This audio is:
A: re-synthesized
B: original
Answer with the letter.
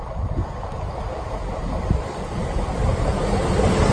A